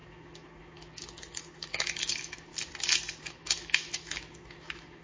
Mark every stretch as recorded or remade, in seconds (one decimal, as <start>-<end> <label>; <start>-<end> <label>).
0.0-2.5 remade; 2.5-3.2 recorded; 3.2-5.0 remade